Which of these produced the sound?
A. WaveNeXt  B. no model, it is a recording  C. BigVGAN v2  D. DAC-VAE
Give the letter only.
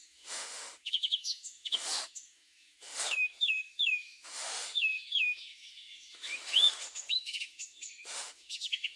D